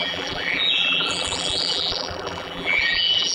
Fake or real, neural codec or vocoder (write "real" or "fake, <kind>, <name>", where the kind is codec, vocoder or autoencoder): fake, vocoder, BigVGAN v2